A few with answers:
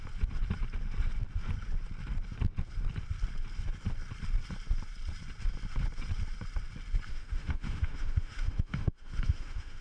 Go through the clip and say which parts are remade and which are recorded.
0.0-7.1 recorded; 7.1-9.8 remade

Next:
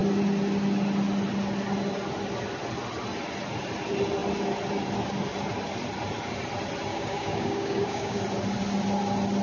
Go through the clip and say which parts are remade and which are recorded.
0.0-6.9 recorded; 6.9-8.2 remade; 8.2-9.4 recorded

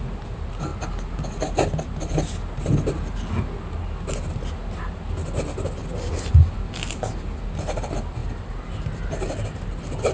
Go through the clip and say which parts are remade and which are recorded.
0.0-10.1 recorded

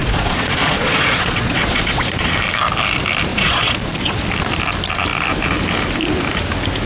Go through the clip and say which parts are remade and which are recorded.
0.0-2.3 remade; 2.3-3.3 recorded; 3.3-4.2 remade; 4.2-6.9 recorded

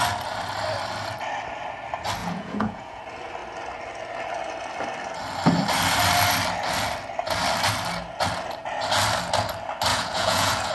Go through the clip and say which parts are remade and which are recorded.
0.0-2.2 recorded; 2.2-3.0 remade; 3.0-9.9 recorded; 9.9-10.7 remade

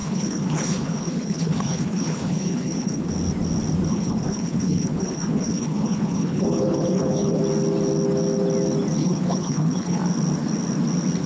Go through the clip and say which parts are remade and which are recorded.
0.0-3.1 remade; 3.1-3.9 recorded; 3.9-7.4 remade; 7.4-9.0 recorded; 9.0-10.0 remade; 10.0-11.3 recorded

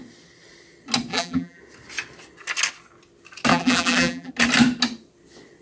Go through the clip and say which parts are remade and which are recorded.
0.0-1.1 recorded; 1.1-1.6 remade; 1.6-3.5 recorded; 3.5-4.3 remade; 4.3-5.6 recorded